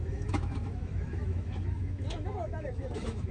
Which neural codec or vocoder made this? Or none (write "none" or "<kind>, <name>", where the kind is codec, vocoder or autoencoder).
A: autoencoder, DAC-VAE